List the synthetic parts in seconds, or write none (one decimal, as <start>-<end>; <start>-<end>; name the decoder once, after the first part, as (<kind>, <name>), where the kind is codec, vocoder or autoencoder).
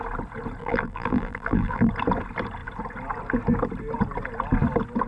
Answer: 0.6-1.9 (vocoder, BigVGAN v2)